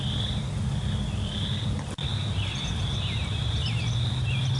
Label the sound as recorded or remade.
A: recorded